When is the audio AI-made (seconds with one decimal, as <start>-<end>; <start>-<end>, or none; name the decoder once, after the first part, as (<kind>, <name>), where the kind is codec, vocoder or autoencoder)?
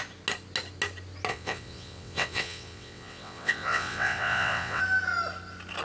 1.3-4.8 (vocoder, WaveNeXt)